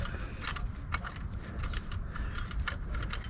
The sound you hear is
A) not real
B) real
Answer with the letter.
B